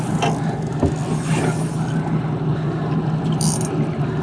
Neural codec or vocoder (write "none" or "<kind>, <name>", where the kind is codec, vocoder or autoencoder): none